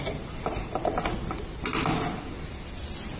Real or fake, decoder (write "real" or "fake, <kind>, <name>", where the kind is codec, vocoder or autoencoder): real